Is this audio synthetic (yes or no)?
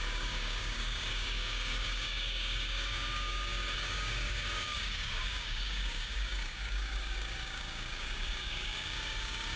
yes